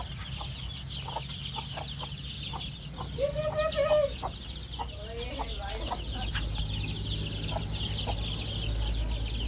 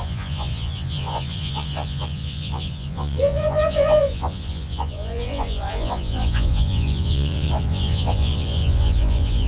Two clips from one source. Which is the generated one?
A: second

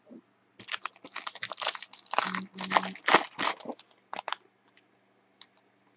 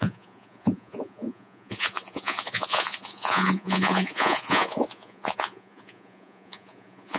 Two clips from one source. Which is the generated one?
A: second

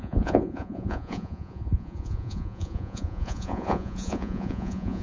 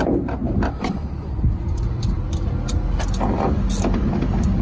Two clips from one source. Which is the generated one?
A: first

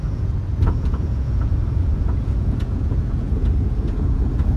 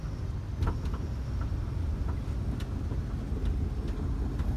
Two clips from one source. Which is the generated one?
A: first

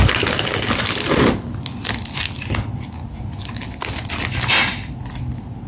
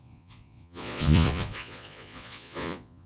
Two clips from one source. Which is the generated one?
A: second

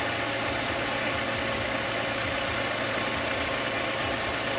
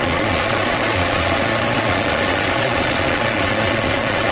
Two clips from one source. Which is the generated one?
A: second